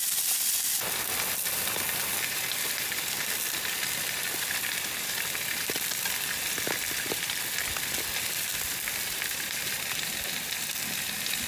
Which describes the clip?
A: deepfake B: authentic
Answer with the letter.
B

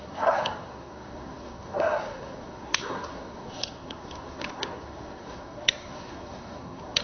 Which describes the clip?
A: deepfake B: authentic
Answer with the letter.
A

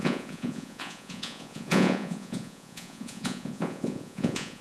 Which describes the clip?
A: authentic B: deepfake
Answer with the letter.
B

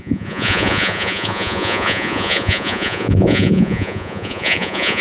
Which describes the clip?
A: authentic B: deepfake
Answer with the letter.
B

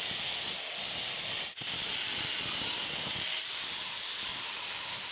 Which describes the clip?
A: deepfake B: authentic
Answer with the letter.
B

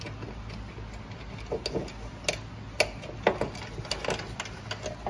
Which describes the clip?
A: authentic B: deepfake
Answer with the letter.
A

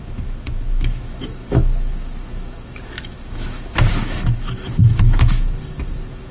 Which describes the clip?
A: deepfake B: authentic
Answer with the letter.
A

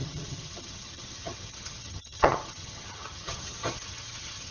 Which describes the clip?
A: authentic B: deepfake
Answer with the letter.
B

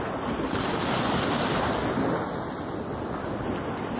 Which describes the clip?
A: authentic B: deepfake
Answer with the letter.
A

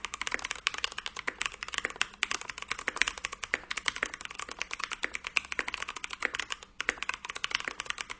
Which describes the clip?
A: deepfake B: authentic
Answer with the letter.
B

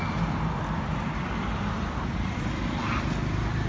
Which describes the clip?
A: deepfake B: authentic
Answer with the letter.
B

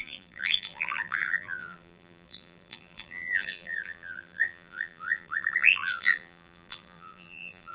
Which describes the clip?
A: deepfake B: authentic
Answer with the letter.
A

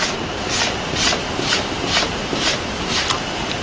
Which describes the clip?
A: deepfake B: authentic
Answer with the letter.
B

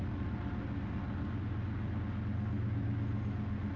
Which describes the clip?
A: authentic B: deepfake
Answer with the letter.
A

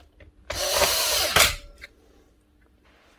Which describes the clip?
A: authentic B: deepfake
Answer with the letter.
A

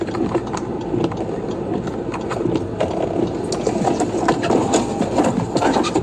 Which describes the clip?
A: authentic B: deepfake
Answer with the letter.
A